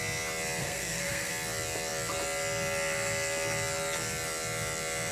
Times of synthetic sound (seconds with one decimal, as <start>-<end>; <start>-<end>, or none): 0.6-1.3